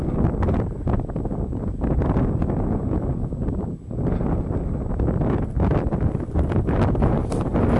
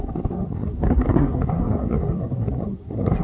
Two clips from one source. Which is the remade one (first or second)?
second